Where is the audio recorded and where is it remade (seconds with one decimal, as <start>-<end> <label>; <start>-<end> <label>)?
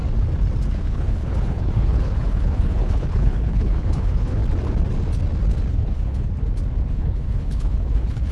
0.0-0.7 recorded; 0.7-4.4 remade; 4.4-5.7 recorded; 5.7-6.3 remade; 6.3-6.9 recorded; 6.9-8.3 remade